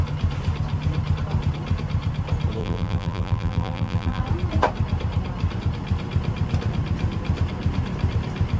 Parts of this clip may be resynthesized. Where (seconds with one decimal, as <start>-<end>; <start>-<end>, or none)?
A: 2.6-4.2